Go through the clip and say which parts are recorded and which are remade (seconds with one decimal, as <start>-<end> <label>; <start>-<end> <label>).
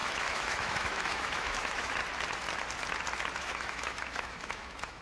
0.0-2.0 remade; 2.0-3.4 recorded; 3.4-5.0 remade